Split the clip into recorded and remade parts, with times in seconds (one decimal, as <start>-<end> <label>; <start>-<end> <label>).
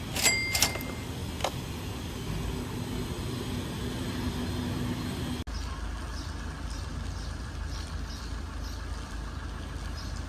0.0-1.2 recorded; 1.2-1.8 remade; 1.8-10.3 recorded